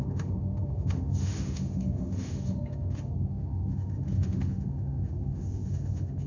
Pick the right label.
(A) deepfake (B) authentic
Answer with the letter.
A